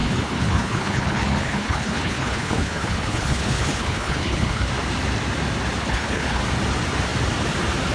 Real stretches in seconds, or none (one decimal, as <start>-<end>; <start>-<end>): 4.7-5.8; 6.4-7.9